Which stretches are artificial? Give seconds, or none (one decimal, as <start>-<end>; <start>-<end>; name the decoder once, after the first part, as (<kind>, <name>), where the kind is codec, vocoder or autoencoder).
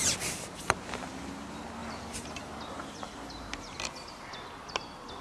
1.8-3.8 (vocoder, BigVGAN v2)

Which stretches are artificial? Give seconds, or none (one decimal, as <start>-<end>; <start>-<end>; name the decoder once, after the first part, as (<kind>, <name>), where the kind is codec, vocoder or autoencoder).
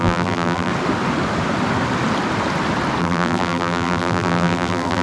0.0-0.7 (vocoder, BigVGAN v2); 3.0-5.0